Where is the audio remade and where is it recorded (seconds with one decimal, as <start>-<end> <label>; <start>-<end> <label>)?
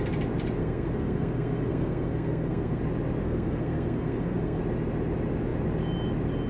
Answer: 0.0-0.6 recorded; 0.6-2.8 remade; 2.8-3.2 recorded; 3.2-4.6 remade; 4.6-6.5 recorded